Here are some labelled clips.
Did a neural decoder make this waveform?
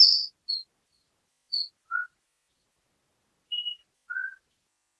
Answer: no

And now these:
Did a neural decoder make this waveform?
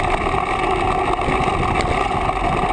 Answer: no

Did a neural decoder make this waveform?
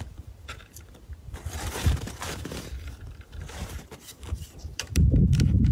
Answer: yes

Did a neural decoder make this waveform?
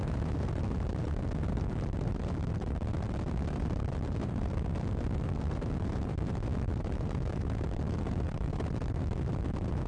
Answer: yes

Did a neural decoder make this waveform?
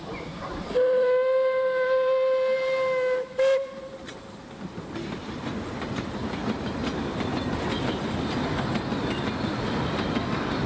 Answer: no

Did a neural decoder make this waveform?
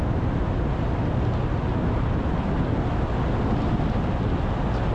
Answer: no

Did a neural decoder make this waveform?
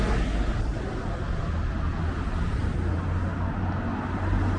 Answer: no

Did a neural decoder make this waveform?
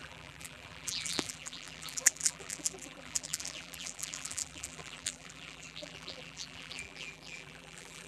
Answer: yes